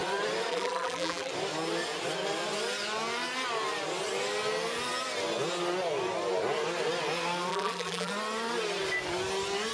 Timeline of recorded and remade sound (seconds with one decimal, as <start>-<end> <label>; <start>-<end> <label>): 0.0-0.5 recorded; 0.5-1.3 remade; 1.3-7.5 recorded; 7.5-8.1 remade; 8.1-9.7 recorded